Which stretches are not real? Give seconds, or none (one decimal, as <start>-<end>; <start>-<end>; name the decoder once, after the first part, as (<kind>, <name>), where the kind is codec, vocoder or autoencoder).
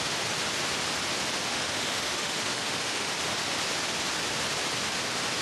1.5-3.1 (autoencoder, DAC-VAE)